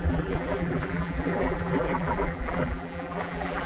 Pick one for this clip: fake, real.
fake